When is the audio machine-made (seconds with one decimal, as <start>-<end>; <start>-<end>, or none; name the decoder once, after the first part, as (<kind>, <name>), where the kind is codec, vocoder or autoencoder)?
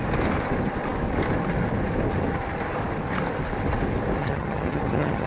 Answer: 4.2-5.3 (vocoder, HiFi-GAN)